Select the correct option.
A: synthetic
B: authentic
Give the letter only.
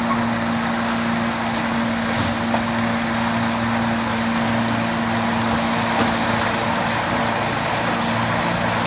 B